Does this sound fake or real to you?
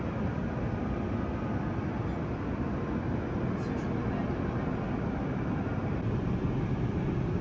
real